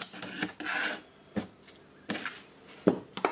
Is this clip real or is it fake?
real